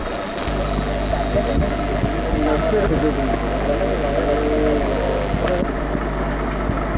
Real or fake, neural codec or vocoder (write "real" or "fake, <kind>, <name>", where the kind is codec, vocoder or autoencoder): real